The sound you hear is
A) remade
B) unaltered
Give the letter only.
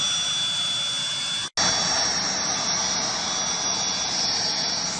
B